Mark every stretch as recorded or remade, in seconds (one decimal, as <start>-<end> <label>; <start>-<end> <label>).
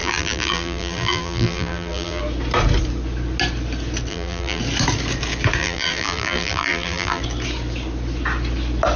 0.0-2.2 remade; 2.2-4.1 recorded; 4.1-4.6 remade; 4.6-5.6 recorded; 5.6-7.2 remade; 7.2-9.0 recorded